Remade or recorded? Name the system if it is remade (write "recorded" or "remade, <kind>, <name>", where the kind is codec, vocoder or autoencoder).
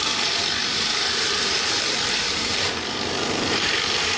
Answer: remade, vocoder, BigVGAN v2